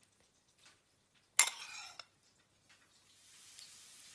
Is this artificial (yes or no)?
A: no